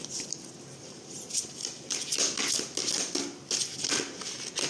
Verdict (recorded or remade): recorded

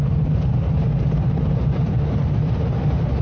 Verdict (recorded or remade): remade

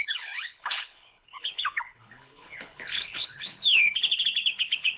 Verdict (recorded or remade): remade